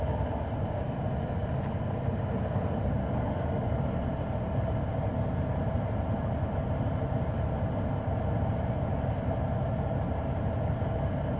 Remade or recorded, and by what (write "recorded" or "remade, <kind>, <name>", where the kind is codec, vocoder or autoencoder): recorded